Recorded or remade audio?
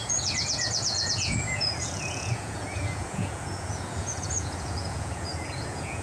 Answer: remade